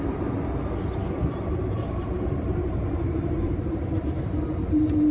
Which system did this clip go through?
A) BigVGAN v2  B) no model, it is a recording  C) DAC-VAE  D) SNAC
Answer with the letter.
A